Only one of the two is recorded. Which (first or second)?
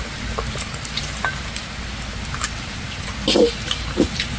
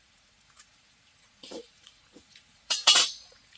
first